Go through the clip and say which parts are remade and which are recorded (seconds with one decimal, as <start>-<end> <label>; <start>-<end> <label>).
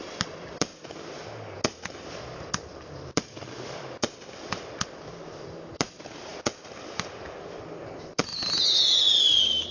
0.0-0.7 remade; 0.7-2.1 recorded; 2.1-6.3 remade; 6.3-7.4 recorded; 7.4-8.3 remade; 8.3-9.2 recorded; 9.2-9.7 remade